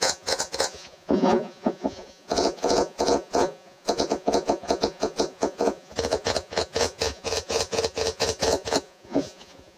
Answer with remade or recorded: remade